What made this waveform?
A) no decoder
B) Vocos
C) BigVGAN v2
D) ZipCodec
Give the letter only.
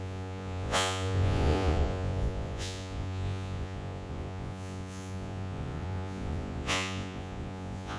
B